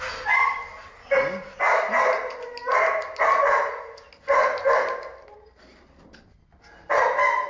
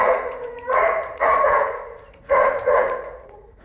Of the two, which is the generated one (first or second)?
second